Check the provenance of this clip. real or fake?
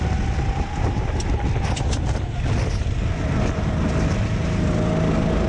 real